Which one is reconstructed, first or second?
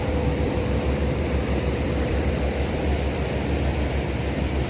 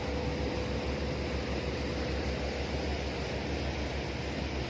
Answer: first